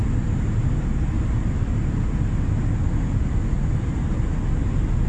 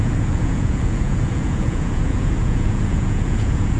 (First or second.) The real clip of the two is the first